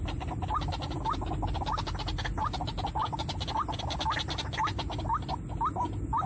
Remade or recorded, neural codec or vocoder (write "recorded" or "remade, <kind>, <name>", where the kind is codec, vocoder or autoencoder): recorded